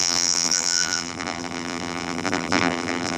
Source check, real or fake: fake